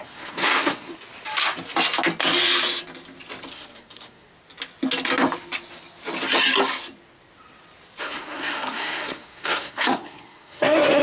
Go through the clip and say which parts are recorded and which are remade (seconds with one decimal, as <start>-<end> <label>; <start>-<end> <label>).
0.0-0.9 remade; 0.9-3.5 recorded; 3.5-4.3 remade; 4.3-8.0 recorded; 8.0-11.0 remade